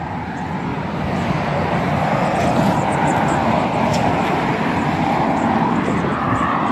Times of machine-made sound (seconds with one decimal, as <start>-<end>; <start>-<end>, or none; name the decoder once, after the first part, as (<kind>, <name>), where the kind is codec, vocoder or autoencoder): none